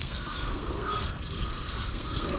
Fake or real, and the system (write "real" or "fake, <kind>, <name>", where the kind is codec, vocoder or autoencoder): fake, codec, SNAC